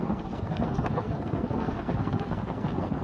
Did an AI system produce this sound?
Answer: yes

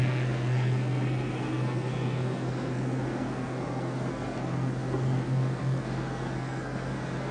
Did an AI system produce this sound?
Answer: yes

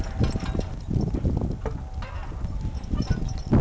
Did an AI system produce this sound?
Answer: no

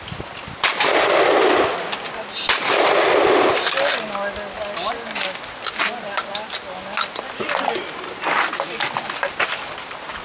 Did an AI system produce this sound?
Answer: no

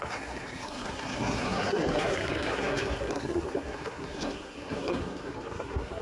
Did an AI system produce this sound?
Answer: yes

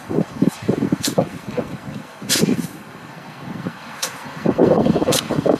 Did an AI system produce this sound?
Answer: yes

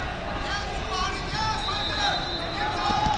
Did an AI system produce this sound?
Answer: no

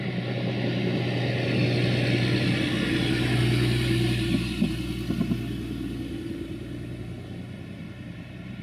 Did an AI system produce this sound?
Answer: no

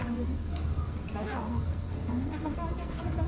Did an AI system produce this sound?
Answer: yes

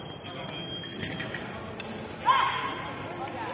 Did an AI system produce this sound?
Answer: no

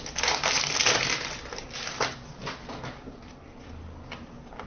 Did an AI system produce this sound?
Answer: no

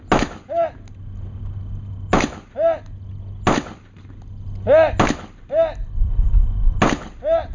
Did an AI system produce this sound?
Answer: no